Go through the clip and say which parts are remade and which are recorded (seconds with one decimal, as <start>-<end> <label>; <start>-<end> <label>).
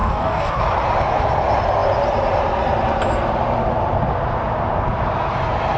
0.0-0.6 remade; 0.6-5.8 recorded